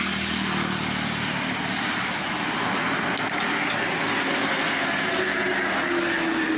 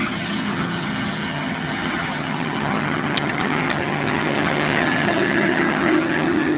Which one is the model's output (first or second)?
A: second